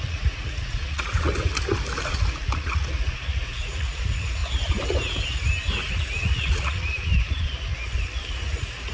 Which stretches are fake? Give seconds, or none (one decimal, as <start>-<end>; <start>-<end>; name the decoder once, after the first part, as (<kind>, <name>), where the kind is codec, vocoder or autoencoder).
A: 0.0-1.5 (vocoder, Vocos); 2.0-4.4; 5.9-7.1; 8.3-8.9